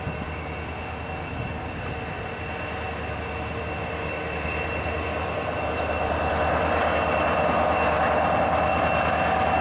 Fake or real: real